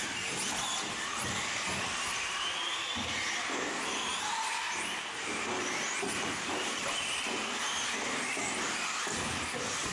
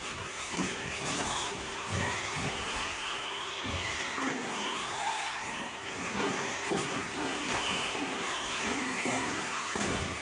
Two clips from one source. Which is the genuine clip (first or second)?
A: first